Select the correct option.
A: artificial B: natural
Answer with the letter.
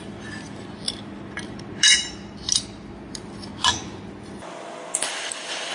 B